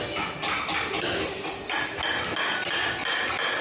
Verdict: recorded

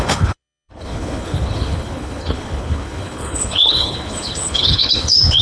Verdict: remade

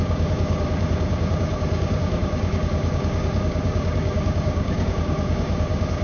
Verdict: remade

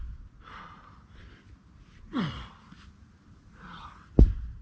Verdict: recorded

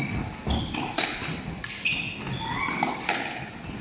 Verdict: recorded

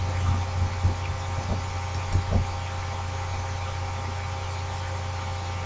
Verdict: recorded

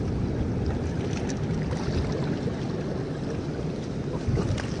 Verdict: recorded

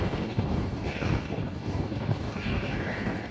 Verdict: remade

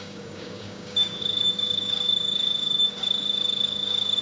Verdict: remade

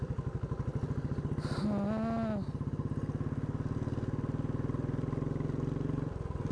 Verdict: recorded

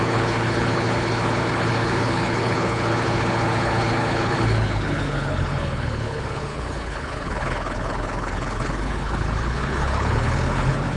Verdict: remade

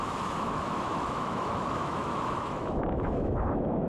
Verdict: remade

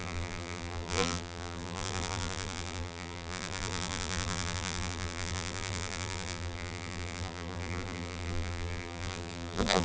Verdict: remade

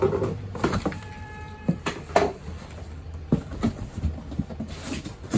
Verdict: remade